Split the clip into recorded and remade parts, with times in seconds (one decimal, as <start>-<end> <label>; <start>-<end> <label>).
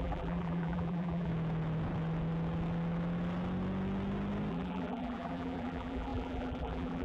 0.0-1.3 remade; 1.3-4.5 recorded; 4.5-7.0 remade